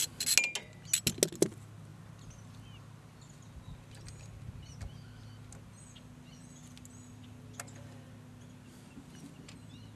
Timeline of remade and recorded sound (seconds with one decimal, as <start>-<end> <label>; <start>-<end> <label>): 0.0-10.0 recorded